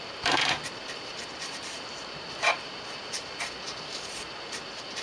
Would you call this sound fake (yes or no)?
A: yes